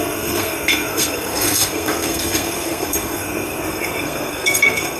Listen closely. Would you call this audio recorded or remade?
remade